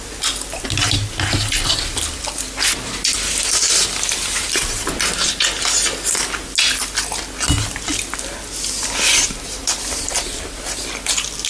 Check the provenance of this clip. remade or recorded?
recorded